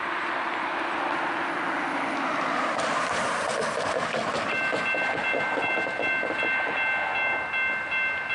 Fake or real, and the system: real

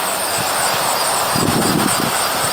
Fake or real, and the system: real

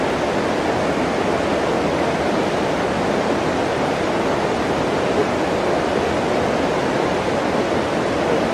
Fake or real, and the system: real